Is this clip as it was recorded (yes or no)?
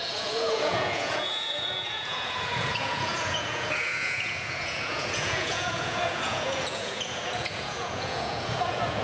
no